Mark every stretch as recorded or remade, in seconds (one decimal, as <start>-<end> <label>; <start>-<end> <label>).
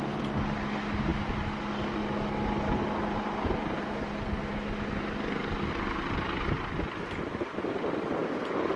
0.0-8.8 recorded